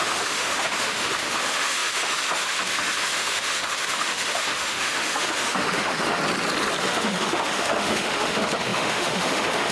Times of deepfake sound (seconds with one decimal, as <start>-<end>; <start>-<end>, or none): 0.0-6.2; 6.8-9.7